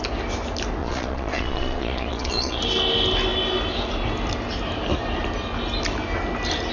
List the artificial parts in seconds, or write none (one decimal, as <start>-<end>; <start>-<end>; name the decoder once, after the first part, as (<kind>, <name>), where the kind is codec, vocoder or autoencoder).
0.8-2.6 (vocoder, Vocos)